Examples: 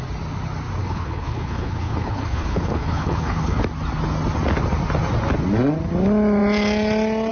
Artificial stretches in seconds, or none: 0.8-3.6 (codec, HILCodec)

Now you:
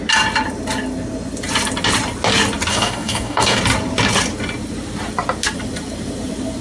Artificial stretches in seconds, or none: 2.7-3.6 (codec, DAC)

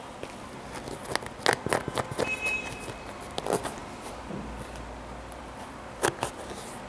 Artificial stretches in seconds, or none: none

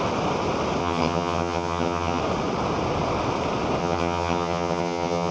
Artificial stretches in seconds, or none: 0.8-2.2 (vocoder, HiFi-GAN); 3.8-5.3

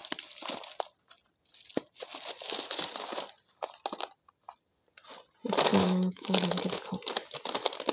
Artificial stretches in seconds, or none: 5.7-6.6 (autoencoder, DAC-VAE)

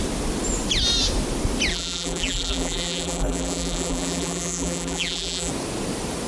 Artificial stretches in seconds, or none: 1.7-5.5 (vocoder, BigVGAN v2)

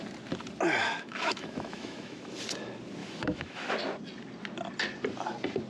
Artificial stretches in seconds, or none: 0.8-2.4 (autoencoder, DAC-VAE); 3.0-3.7

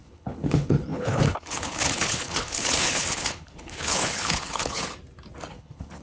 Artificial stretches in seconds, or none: 0.0-4.8 (codec, HILCodec); 5.5-6.0